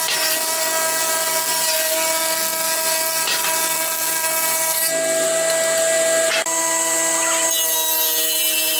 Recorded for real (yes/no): yes